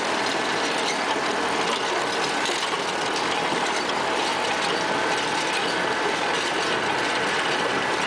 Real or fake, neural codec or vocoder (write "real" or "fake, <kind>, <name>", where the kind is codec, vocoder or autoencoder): real